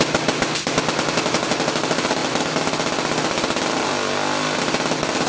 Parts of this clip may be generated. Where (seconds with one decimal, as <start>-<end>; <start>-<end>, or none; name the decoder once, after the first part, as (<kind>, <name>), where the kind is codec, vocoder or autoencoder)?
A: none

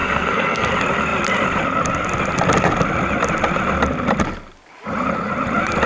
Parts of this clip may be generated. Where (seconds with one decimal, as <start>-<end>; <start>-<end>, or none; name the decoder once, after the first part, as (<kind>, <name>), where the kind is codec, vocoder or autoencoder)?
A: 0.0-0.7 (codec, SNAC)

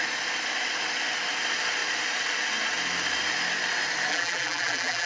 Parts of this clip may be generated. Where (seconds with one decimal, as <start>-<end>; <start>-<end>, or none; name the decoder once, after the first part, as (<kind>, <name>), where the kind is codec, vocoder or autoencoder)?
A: 4.1-5.1 (vocoder, BigVGAN v2)